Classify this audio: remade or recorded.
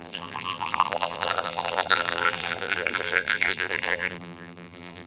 remade